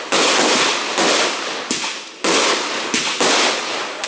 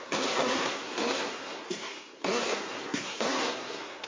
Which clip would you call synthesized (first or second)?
second